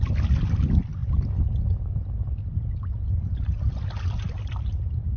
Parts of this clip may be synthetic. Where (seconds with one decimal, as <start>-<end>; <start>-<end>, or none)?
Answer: none